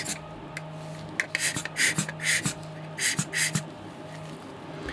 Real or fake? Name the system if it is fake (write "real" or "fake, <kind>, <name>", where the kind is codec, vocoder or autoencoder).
real